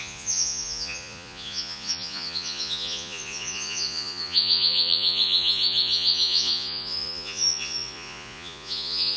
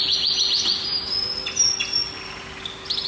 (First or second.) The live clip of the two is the second